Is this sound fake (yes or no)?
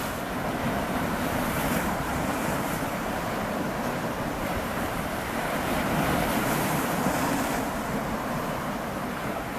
yes